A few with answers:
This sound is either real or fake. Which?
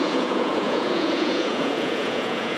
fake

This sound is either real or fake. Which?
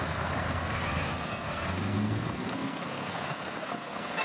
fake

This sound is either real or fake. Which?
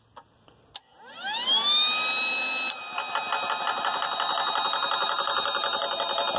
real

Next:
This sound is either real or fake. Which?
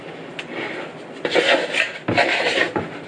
real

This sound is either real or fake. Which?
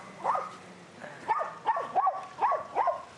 real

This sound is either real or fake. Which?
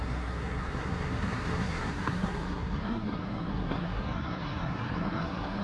fake